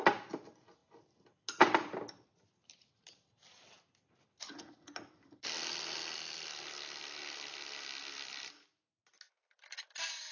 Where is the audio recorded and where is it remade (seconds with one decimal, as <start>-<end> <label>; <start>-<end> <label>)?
0.0-10.3 recorded